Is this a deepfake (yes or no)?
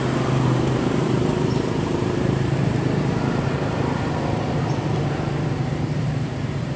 yes